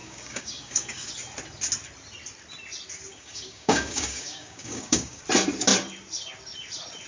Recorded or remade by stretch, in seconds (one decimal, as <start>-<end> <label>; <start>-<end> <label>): 0.0-1.1 remade; 1.1-3.1 recorded; 3.1-5.2 remade; 5.2-7.1 recorded